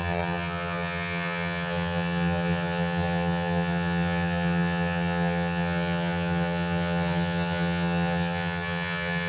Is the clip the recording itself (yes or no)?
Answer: no